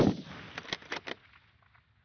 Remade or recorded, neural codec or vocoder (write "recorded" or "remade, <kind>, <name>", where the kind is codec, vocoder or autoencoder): recorded